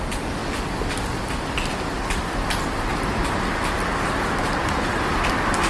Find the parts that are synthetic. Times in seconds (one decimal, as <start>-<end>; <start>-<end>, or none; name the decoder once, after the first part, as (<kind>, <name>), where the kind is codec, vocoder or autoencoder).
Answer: none